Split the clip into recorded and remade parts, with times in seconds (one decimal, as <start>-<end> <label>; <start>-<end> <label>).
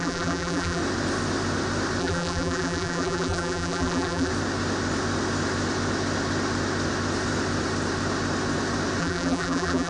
0.0-0.8 remade; 0.8-2.0 recorded; 2.0-4.3 remade; 4.3-9.0 recorded; 9.0-9.9 remade